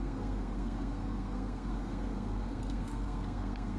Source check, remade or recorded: remade